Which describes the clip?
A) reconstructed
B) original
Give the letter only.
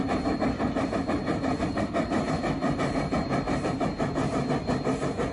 B